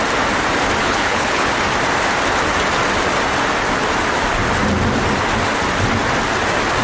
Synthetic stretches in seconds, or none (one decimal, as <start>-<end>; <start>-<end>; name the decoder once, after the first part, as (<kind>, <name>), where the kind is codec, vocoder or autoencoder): 0.8-1.5 (codec, HILCodec)